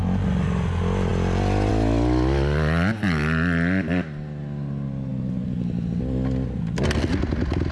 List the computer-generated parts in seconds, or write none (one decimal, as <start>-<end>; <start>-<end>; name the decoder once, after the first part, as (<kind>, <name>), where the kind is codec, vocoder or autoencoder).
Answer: none